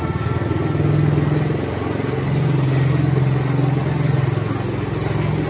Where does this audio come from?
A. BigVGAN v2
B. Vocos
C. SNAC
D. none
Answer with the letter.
D